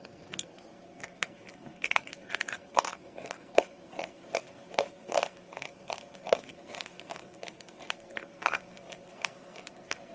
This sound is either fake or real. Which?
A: fake